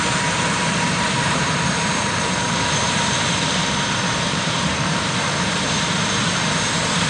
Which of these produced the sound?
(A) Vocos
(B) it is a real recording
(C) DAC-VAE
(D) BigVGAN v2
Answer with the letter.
D